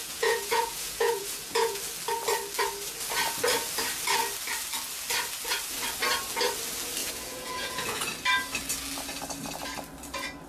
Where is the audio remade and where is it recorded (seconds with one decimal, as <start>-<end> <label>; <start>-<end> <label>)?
0.0-1.8 remade; 1.8-7.0 recorded; 7.0-8.0 remade; 8.0-10.5 recorded